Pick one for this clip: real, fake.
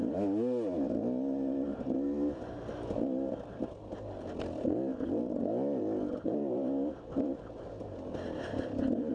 real